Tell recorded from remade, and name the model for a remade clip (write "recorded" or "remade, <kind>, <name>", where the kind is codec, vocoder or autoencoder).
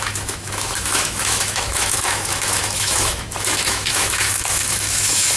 remade, autoencoder, DAC-VAE